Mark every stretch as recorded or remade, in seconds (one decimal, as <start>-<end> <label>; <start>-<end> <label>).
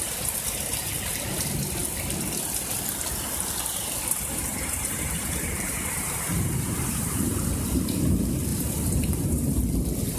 0.0-4.5 recorded; 4.5-7.5 remade; 7.5-8.5 recorded; 8.5-9.6 remade; 9.6-10.2 recorded